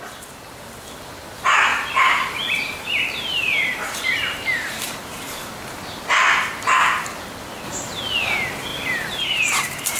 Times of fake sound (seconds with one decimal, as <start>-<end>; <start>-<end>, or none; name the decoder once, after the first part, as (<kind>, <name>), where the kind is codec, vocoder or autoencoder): 1.7-5.5 (vocoder, BigVGAN v2); 8.7-10.0